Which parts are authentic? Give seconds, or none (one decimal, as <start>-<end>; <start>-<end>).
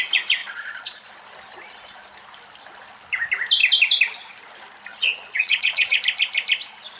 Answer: 0.0-0.4; 1.1-4.9; 6.0-7.0